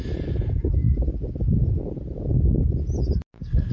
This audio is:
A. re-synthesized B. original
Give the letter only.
B